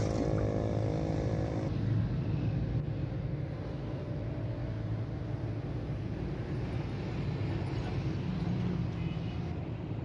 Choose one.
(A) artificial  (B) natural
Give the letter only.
B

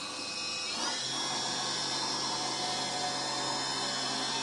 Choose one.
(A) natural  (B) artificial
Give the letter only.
A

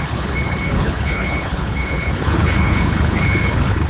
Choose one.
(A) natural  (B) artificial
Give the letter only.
B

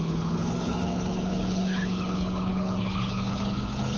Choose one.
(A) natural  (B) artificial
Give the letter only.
B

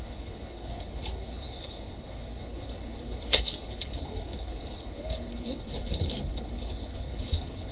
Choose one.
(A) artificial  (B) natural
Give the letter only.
A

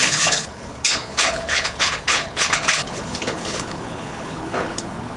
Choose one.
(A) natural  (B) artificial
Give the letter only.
B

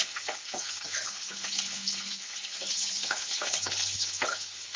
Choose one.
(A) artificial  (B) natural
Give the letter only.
A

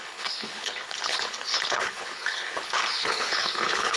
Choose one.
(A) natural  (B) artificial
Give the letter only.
B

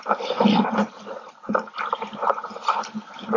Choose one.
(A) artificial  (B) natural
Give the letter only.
B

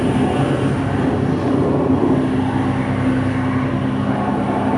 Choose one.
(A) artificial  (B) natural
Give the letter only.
B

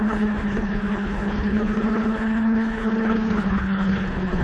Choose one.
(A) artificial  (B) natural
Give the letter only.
A